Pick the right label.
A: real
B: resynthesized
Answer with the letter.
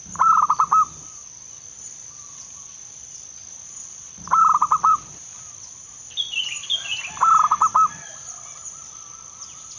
B